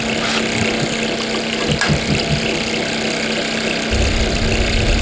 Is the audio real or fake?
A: real